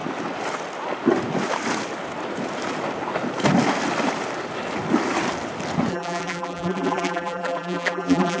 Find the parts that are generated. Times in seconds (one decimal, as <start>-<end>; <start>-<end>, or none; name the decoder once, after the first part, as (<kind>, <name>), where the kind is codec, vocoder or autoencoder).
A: 5.9-8.4 (vocoder, BigVGAN v2)